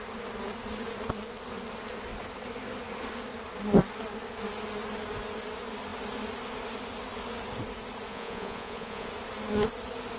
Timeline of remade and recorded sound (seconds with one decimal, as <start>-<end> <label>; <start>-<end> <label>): 0.0-8.1 recorded; 8.1-9.1 remade; 9.1-10.2 recorded